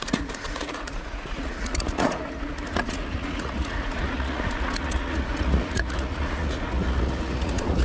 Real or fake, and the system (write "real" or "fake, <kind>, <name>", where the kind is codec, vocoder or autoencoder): fake, vocoder, Vocos